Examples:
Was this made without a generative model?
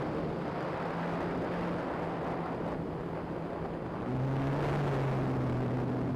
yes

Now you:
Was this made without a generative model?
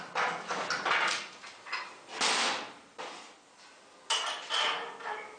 yes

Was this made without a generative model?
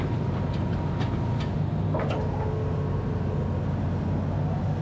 yes